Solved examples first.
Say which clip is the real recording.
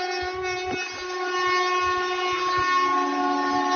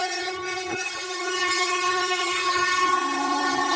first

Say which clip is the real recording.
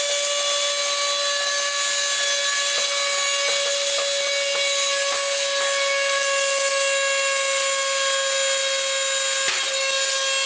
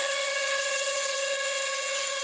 first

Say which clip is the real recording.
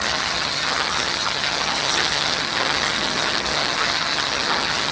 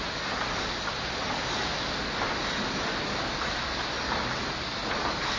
second